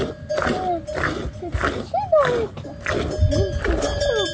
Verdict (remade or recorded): recorded